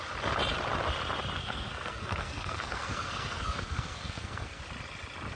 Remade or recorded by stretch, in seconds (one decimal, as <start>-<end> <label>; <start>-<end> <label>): 0.0-1.4 recorded; 1.4-4.6 remade; 4.6-5.4 recorded